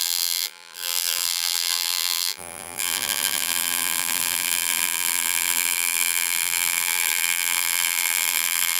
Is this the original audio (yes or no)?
no